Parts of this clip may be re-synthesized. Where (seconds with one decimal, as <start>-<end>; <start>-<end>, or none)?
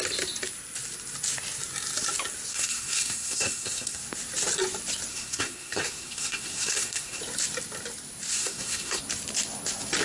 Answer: 2.5-4.0; 5.1-7.2; 8.3-9.0